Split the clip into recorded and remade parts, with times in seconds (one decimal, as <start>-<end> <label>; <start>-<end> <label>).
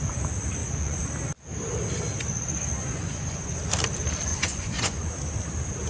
0.0-0.6 recorded; 0.6-1.1 remade; 1.1-2.9 recorded; 2.9-3.6 remade; 3.6-4.3 recorded; 4.3-5.1 remade; 5.1-5.9 recorded